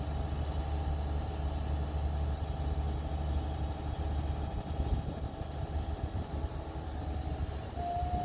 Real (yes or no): yes